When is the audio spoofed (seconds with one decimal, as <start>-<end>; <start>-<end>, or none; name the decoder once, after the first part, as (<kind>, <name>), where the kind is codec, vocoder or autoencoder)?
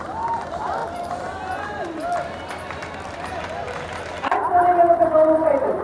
0.0-0.8 (vocoder, BigVGAN v2); 4.3-5.8